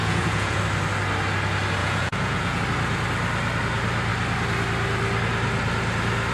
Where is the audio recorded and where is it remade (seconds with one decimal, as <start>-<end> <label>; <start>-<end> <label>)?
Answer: 0.0-0.6 remade; 0.6-1.8 recorded; 1.8-2.6 remade; 2.6-6.3 recorded